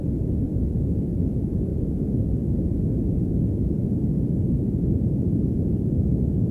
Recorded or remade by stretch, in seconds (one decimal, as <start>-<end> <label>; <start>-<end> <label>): 0.0-6.5 recorded